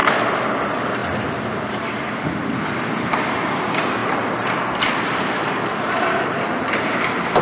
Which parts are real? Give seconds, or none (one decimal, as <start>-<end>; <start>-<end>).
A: 0.0-0.6; 1.0-1.7